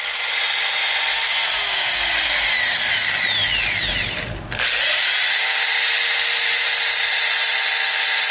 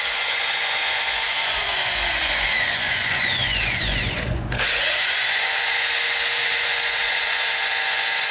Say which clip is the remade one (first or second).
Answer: second